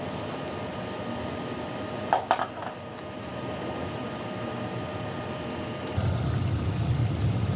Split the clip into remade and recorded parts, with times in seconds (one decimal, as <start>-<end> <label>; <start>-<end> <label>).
0.0-7.6 recorded